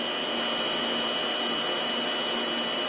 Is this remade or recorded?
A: recorded